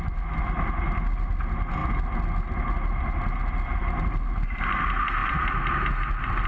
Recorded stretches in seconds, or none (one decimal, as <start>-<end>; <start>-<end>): 0.0-6.5